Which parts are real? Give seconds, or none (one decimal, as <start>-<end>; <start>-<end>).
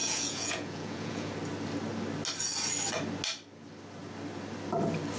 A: 1.3-5.2